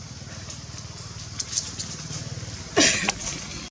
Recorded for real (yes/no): yes